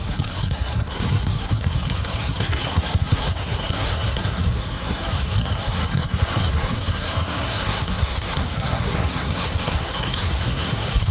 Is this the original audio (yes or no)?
no